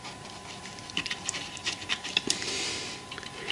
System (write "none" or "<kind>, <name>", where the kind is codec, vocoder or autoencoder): vocoder, BigVGAN v2